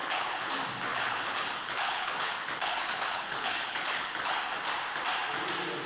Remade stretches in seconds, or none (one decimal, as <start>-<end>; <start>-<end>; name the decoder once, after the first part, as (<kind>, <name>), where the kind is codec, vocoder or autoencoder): 0.0-0.5 (codec, HILCodec); 0.9-4.4